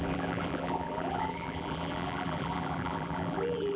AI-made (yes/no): yes